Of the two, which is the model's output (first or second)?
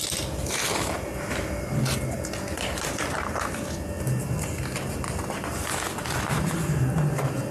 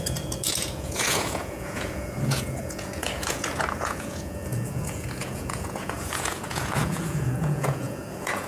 second